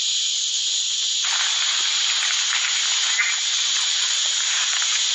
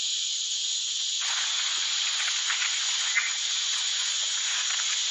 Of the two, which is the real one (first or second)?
first